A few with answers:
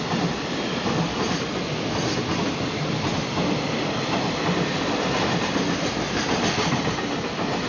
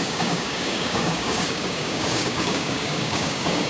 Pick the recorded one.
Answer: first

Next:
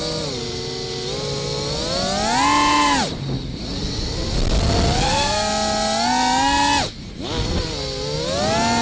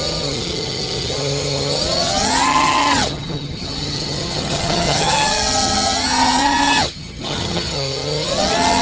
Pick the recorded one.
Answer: first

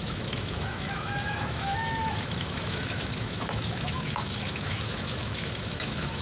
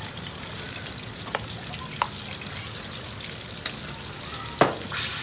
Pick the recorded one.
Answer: second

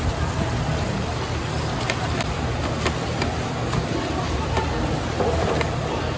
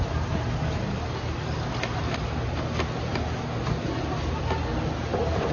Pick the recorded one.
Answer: second